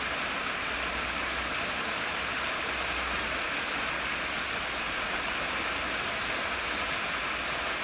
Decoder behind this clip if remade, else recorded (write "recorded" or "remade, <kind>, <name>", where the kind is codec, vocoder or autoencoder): recorded